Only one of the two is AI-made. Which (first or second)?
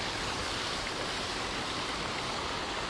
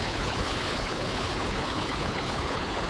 second